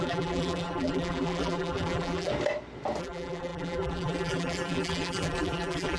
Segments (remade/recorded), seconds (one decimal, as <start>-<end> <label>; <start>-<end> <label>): 0.0-2.3 remade; 2.3-3.0 recorded; 3.0-6.0 remade